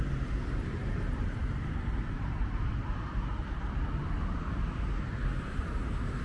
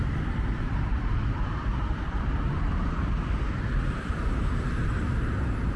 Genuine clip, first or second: first